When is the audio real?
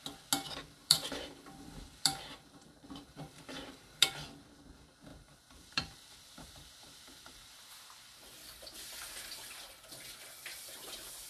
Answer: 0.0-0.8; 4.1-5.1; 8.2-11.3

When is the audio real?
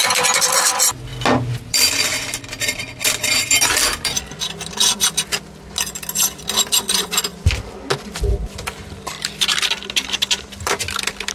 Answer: 0.7-7.3; 9.7-11.3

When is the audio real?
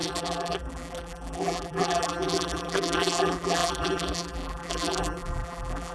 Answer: none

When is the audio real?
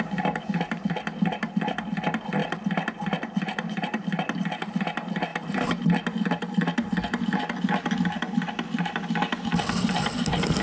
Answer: 0.0-10.6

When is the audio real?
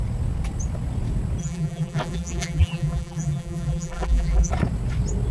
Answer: 0.0-1.4; 4.5-5.3